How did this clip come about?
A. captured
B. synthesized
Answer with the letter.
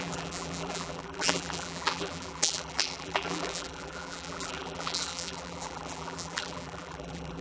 B